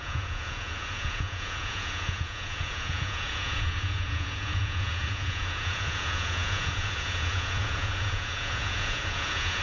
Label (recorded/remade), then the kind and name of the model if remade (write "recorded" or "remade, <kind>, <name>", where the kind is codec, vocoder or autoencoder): remade, vocoder, Vocos